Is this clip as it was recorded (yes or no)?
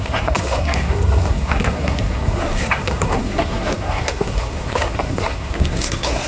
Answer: no